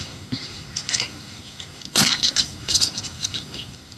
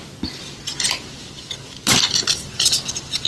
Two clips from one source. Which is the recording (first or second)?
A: second